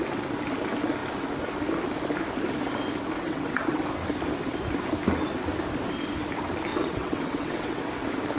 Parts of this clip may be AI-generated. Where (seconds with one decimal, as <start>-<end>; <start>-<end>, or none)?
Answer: 3.2-3.8; 6.7-7.8